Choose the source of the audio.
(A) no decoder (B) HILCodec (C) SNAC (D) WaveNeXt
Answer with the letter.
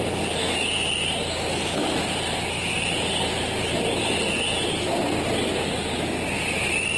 A